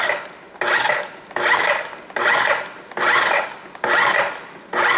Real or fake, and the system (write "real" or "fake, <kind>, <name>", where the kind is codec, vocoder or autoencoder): real